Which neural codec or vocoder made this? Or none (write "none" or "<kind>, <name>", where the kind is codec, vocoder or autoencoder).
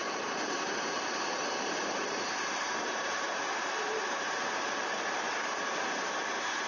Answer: vocoder, BigVGAN v2